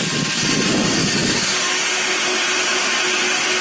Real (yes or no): yes